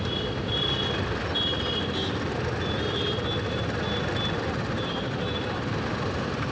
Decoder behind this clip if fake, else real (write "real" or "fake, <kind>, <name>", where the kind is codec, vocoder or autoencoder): real